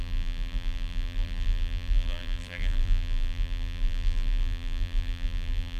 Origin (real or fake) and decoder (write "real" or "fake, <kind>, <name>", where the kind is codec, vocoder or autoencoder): fake, vocoder, BigVGAN v2